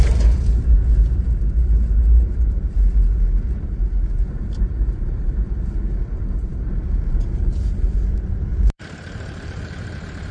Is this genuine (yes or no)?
no